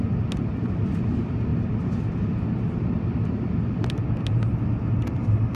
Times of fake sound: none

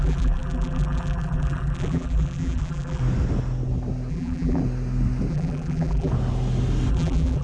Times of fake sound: 0.0-3.0; 4.1-4.6; 5.3-6.1; 6.9-7.4

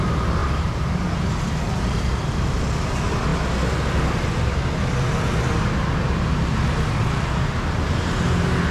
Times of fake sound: 0.4-2.6

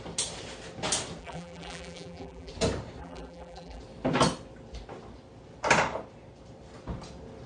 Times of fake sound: 1.2-2.5; 3.0-3.8

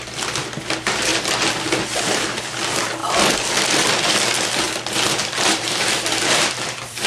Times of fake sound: 0.0-7.1

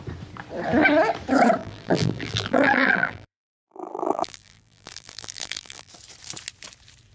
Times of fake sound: 1.6-5.9

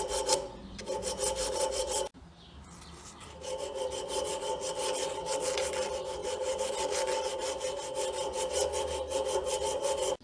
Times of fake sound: 0.6-1.8; 6.2-6.7

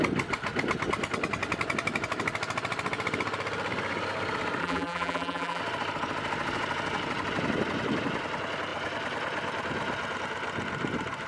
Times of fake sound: 4.6-5.6